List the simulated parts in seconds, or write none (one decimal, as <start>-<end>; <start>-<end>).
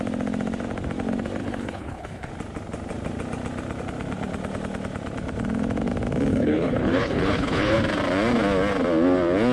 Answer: 1.4-2.3; 6.3-7.8